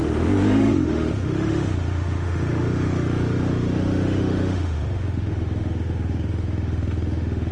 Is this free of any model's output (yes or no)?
no